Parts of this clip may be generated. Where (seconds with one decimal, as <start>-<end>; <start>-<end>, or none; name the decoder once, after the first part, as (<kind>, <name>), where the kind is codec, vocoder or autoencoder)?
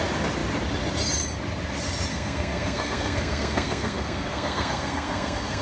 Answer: 2.1-5.6 (codec, SNAC)